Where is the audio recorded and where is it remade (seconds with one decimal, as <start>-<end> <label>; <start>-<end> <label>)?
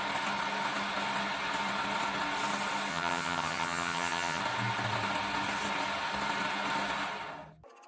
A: 0.0-2.9 recorded; 2.9-4.4 remade; 4.4-7.9 recorded